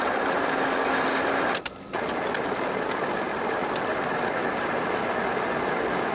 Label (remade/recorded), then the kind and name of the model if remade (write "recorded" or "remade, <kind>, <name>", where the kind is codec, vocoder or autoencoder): recorded